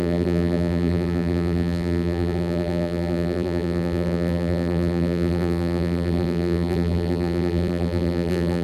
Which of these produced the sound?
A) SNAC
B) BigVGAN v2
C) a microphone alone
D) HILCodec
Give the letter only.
B